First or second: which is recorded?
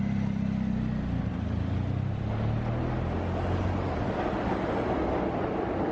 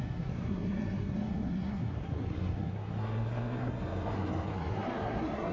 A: first